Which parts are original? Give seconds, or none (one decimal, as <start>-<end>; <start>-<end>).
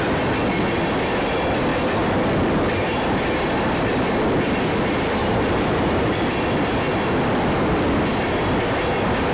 0.0-5.2; 6.2-9.3